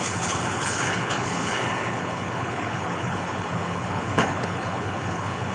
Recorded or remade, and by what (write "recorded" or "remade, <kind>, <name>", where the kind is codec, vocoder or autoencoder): remade, codec, HILCodec